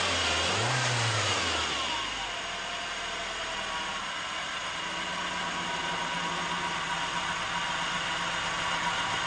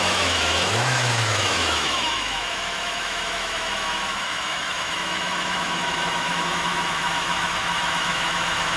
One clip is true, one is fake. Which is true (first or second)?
first